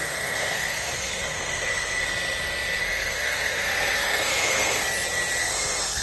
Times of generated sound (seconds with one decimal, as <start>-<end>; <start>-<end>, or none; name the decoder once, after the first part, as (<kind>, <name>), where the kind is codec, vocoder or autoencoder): 0.0-2.0 (codec, SNAC); 2.8-4.8; 5.4-6.0